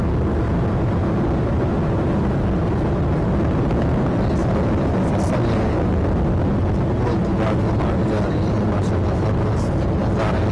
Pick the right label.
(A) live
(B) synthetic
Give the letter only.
A